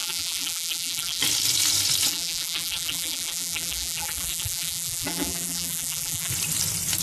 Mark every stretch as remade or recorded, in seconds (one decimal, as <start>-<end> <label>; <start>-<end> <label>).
0.0-1.2 remade; 1.2-2.1 recorded; 2.1-6.3 remade; 6.3-7.0 recorded